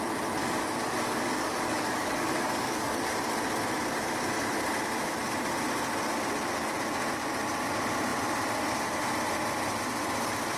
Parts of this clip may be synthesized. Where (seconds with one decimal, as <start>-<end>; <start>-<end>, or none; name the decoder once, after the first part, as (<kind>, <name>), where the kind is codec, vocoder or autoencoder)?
0.4-3.1 (codec, DAC)